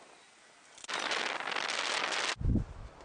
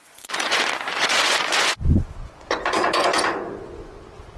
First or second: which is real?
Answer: first